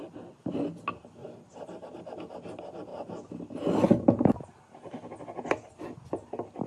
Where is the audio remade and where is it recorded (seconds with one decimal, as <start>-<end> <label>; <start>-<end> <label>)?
0.0-6.7 recorded